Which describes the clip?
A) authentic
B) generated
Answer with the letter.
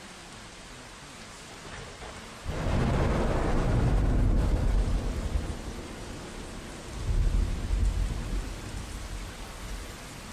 A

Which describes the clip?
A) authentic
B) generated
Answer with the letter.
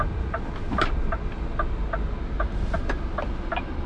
A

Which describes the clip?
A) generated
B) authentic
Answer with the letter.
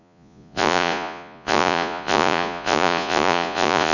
A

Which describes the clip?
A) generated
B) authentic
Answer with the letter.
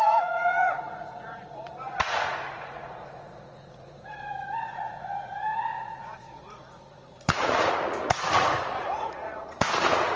A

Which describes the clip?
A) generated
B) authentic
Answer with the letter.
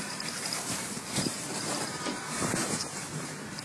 A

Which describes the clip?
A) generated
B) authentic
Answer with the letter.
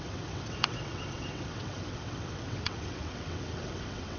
A